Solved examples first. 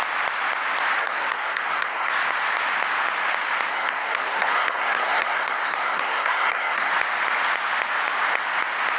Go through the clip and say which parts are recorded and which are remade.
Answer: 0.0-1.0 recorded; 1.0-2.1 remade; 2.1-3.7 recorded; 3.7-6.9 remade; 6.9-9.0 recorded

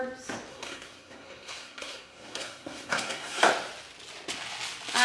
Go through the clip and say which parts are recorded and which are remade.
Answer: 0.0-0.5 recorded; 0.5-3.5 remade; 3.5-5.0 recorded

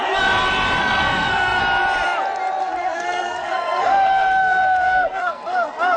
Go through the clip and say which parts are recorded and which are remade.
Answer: 0.0-0.8 recorded; 0.8-1.6 remade; 1.6-2.6 recorded; 2.6-6.0 remade